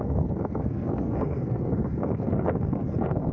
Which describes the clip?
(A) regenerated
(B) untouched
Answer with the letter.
A